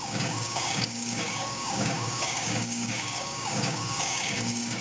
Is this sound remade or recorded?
remade